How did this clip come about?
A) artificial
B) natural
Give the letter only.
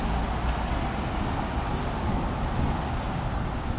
B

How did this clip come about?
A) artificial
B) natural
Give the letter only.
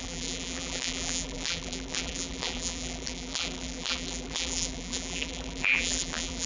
A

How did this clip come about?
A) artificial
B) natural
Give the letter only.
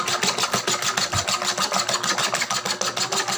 B